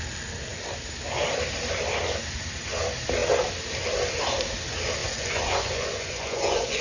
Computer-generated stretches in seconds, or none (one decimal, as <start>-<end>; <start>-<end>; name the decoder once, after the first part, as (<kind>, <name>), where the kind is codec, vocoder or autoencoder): 5.0-6.8 (vocoder, Vocos)

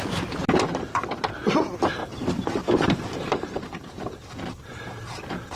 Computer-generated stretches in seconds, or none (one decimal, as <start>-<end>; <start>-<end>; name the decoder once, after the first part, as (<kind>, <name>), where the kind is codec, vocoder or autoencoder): 0.4-1.0 (vocoder, BigVGAN v2); 2.0-5.6

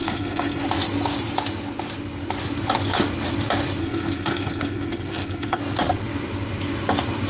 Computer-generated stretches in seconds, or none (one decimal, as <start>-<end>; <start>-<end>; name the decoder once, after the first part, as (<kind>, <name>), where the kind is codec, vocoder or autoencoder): 0.0-0.6 (codec, SNAC); 3.8-5.6

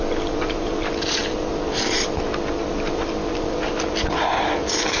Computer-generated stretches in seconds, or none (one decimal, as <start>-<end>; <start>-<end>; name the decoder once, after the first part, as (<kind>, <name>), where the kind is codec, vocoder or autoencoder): 0.0-1.2 (vocoder, BigVGAN v2); 2.7-5.0

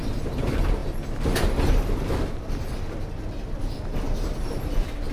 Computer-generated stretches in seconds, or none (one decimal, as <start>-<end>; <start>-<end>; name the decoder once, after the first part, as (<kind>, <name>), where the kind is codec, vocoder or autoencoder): none

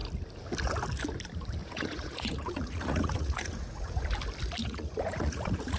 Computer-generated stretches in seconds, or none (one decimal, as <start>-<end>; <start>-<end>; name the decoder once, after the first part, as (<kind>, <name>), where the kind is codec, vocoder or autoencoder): 1.6-4.0 (vocoder, Vocos); 4.6-5.8

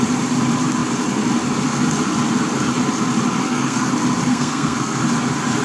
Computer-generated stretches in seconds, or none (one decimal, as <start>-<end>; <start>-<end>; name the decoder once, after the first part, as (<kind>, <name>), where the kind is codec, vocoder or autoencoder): 3.4-3.9 (codec, SNAC); 4.3-5.0